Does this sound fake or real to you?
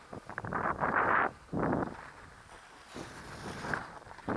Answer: real